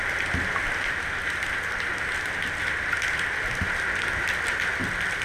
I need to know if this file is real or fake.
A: real